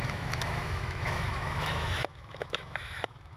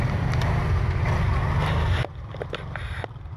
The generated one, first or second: first